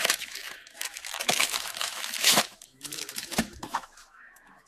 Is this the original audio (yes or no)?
no